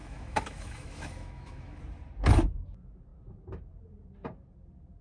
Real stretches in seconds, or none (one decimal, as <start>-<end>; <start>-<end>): 1.8-5.0